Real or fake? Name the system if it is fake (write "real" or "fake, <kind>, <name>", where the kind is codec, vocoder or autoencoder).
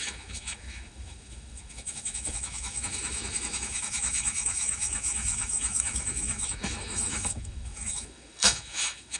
fake, autoencoder, DAC-VAE